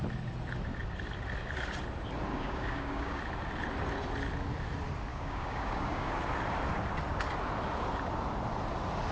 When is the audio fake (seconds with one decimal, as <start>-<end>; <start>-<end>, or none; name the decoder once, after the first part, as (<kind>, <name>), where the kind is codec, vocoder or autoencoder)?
2.3-3.2 (codec, DAC); 5.1-6.1